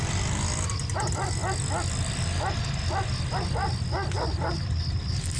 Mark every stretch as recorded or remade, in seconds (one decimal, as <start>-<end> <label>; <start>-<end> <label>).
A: 0.0-5.4 recorded